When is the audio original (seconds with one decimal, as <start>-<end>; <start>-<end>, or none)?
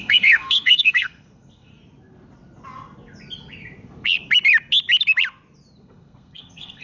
1.7-5.8